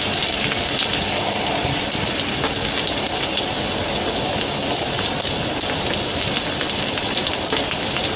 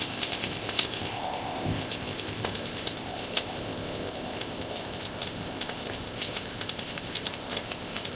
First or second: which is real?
first